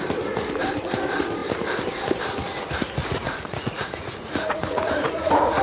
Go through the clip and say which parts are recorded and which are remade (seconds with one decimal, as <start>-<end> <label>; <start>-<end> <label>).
0.0-3.0 recorded; 3.0-5.6 remade